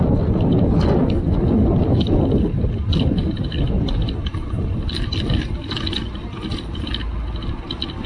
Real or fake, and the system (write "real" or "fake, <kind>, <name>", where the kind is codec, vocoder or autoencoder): real